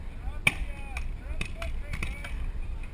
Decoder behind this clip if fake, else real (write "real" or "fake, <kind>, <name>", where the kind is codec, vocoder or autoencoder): real